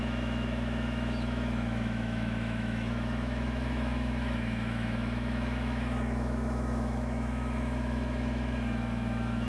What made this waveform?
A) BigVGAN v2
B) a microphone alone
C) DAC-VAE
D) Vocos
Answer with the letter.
C